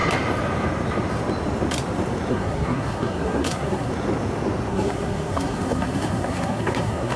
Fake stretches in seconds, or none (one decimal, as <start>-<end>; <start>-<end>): 2.3-3.9; 4.7-7.2